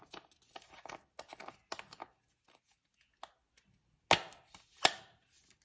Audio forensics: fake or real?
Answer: real